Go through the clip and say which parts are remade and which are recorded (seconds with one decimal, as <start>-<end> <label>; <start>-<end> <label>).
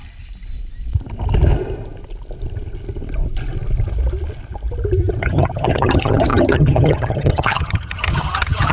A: 0.0-5.2 recorded; 5.2-8.7 remade